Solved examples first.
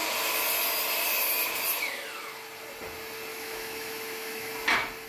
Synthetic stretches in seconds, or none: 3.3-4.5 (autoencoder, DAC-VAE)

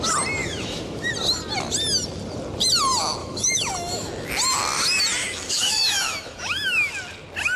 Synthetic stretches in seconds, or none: 0.4-1.1 (autoencoder, DAC-VAE); 3.2-4.3; 5.2-6.9

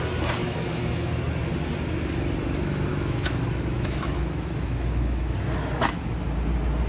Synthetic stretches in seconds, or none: 0.4-1.1 (autoencoder, DAC-VAE); 2.9-6.1